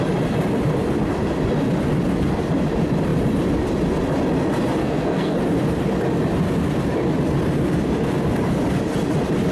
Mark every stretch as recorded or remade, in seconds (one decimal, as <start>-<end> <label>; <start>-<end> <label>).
0.0-4.8 recorded; 4.8-5.4 remade; 5.4-9.5 recorded